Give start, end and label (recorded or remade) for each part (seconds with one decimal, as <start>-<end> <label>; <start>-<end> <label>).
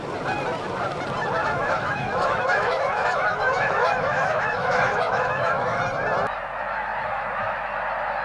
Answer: 0.0-1.4 recorded; 1.4-5.8 remade; 5.8-8.2 recorded